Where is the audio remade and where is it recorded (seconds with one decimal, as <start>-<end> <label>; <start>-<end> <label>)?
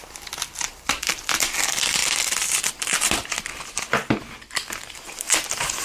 0.0-5.8 recorded